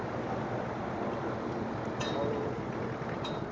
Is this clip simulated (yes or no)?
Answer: no